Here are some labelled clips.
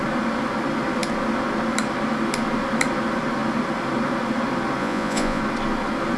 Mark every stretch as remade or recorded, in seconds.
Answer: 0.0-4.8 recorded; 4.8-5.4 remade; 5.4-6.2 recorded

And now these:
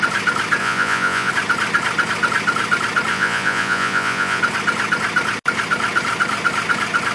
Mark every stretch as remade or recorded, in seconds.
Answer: 0.0-0.6 recorded; 0.6-1.3 remade; 1.3-3.1 recorded; 3.1-4.4 remade; 4.4-7.1 recorded

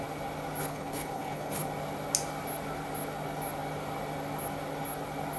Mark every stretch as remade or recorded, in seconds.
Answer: 0.0-0.6 recorded; 0.6-1.7 remade; 1.7-5.4 recorded

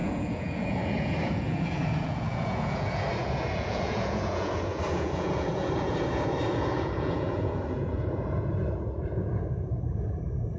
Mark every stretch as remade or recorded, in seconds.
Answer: 0.0-10.6 remade

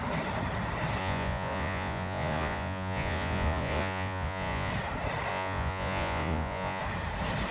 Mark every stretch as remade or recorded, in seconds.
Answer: 0.0-1.0 recorded; 1.0-4.7 remade; 4.7-5.3 recorded; 5.3-6.8 remade; 6.8-7.5 recorded

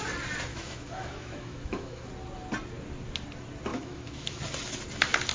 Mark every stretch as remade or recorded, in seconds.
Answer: 0.0-0.5 recorded; 0.5-2.1 remade; 2.1-3.7 recorded; 3.7-4.4 remade; 4.4-5.3 recorded

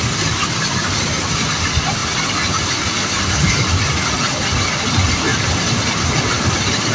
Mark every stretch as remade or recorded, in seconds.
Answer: 0.0-5.3 recorded; 5.3-6.1 remade; 6.1-6.9 recorded